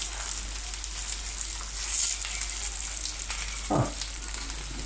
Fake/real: real